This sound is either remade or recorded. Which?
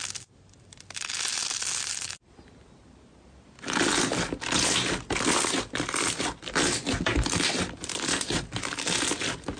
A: recorded